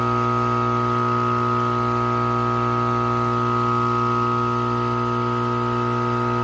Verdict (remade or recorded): recorded